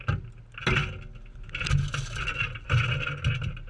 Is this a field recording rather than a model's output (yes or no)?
yes